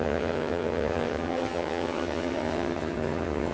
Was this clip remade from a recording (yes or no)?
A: yes